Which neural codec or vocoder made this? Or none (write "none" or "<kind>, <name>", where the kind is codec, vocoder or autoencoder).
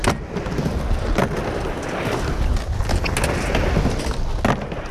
none